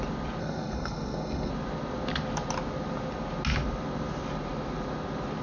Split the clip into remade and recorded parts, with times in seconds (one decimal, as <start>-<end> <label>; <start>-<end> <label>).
0.0-0.4 recorded; 0.4-1.5 remade; 1.5-5.4 recorded